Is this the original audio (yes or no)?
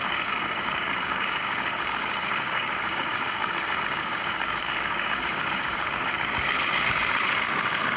no